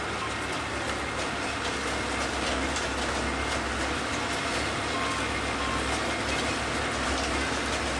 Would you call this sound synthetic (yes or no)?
no